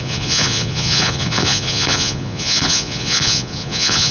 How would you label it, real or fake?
fake